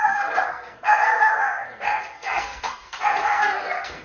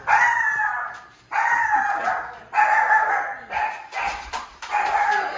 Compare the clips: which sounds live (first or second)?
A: second